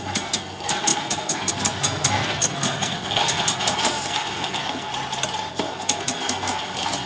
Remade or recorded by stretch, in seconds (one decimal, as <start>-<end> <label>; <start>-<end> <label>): 0.0-4.9 remade; 4.9-5.5 recorded; 5.5-7.1 remade